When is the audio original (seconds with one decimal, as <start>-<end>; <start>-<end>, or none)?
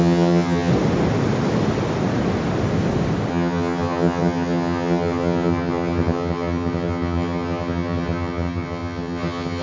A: 0.7-3.3